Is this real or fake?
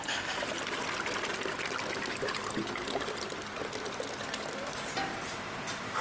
real